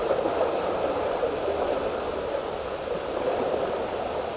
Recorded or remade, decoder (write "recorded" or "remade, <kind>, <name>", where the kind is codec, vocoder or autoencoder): recorded